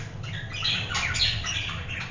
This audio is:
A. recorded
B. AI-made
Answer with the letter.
A